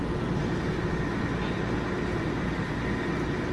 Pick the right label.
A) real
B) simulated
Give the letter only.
A